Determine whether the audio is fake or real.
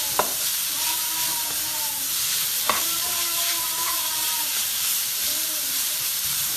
fake